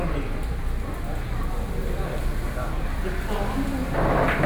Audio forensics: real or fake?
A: real